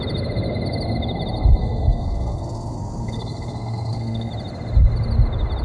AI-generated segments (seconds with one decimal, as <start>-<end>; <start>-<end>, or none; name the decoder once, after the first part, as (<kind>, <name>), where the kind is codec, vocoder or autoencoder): 1.6-4.3 (codec, SNAC)